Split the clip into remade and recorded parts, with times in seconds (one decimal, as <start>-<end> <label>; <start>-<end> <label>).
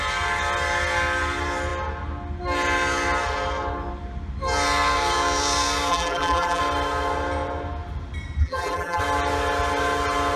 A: 0.0-5.9 recorded; 5.9-6.6 remade; 6.6-8.4 recorded; 8.4-9.0 remade; 9.0-10.4 recorded